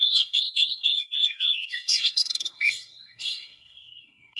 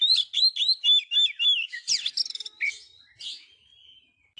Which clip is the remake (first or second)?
first